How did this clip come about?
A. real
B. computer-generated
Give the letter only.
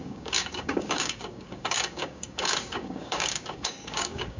B